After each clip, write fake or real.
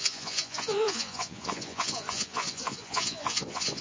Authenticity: fake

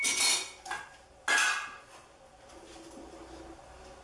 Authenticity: real